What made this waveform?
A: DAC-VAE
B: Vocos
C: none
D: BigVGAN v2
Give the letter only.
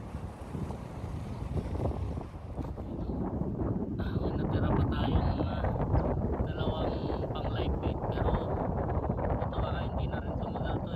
D